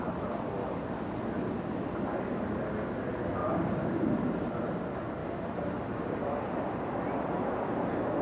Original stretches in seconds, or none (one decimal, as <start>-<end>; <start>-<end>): 0.0-3.4; 4.0-8.2